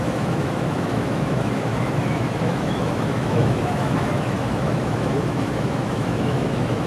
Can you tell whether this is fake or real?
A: fake